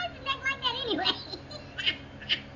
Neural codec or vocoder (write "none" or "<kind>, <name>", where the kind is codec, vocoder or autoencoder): none